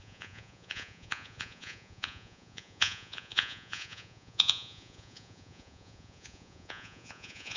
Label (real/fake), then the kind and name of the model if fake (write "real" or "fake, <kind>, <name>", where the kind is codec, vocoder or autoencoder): fake, vocoder, Vocos